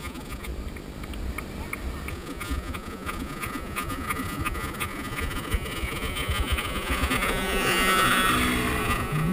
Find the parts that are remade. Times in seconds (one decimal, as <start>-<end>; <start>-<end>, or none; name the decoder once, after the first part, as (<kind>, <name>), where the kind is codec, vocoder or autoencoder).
0.0-0.5 (vocoder, Vocos); 2.1-8.3; 8.8-9.3